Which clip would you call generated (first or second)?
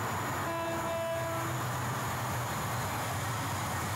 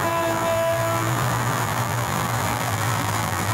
second